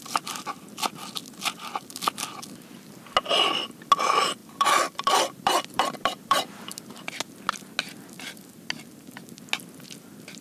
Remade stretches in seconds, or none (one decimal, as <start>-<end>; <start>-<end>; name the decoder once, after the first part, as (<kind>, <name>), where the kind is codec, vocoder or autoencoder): 4.4-6.6 (vocoder, BigVGAN v2)